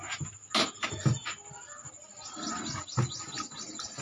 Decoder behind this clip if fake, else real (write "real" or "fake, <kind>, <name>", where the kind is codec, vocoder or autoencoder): real